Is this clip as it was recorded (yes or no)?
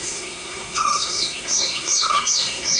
no